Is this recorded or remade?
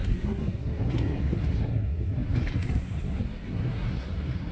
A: remade